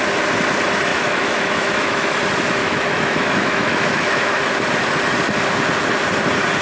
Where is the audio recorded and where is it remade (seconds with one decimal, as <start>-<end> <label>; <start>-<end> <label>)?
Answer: 0.0-0.9 recorded; 0.9-2.2 remade; 2.2-2.6 recorded; 2.6-4.5 remade; 4.5-6.6 recorded